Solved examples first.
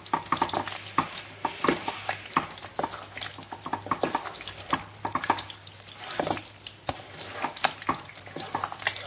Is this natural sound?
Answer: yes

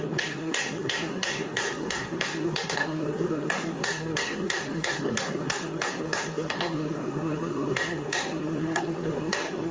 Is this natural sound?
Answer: no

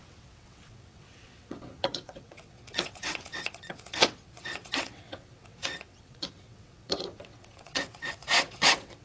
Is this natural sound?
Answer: no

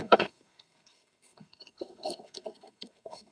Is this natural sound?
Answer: no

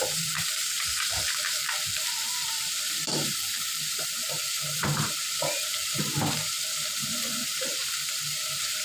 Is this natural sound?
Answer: no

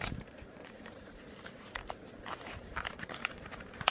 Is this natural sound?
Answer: no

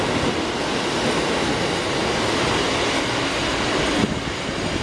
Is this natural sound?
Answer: yes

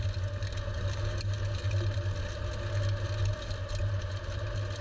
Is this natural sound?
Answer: yes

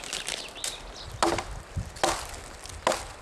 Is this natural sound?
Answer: yes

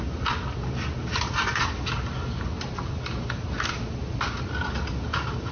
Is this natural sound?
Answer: yes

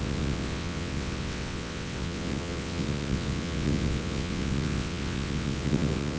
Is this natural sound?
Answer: no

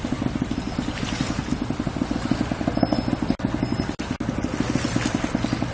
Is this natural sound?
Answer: yes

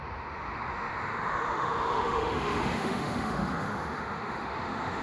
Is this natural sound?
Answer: no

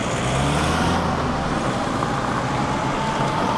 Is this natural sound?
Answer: yes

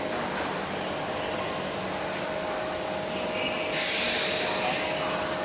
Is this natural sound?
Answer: yes